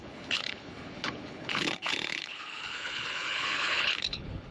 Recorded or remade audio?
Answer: remade